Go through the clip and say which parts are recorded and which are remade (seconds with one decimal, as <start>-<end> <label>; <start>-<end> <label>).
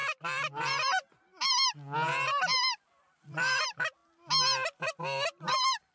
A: 0.0-1.6 remade; 1.6-2.6 recorded; 2.6-4.0 remade; 4.0-5.0 recorded; 5.0-5.9 remade